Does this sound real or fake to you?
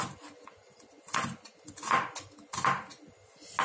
real